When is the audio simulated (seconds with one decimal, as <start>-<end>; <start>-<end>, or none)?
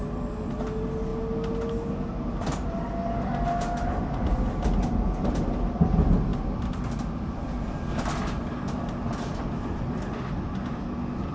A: none